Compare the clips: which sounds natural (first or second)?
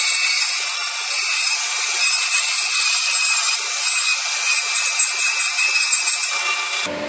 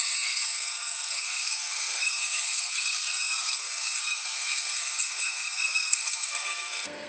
first